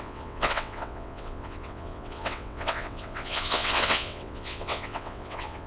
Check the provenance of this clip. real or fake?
fake